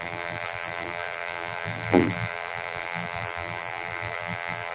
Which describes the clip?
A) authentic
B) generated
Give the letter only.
B